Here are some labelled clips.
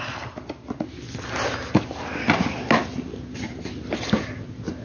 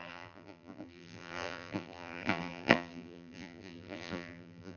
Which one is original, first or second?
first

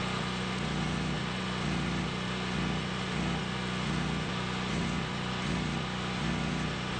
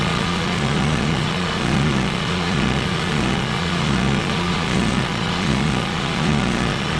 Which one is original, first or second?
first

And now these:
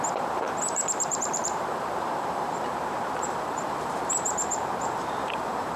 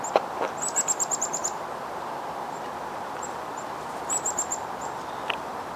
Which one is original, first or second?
second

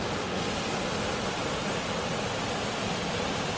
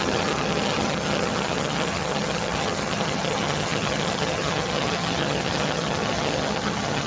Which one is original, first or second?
first